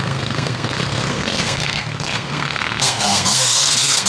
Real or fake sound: fake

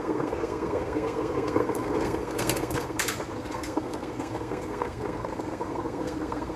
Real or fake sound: fake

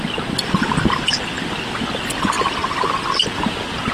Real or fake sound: real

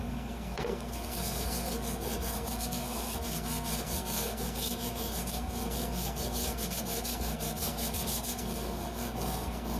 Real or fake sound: fake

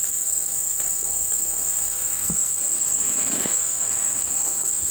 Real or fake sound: fake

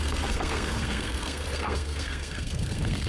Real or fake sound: fake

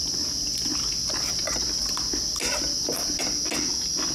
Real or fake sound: real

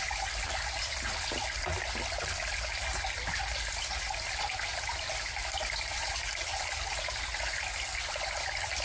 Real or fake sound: real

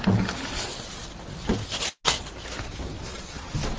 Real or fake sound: real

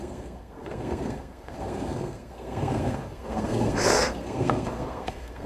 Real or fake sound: fake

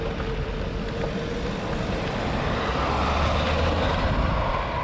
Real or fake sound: real